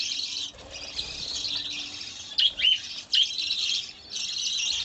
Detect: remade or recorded recorded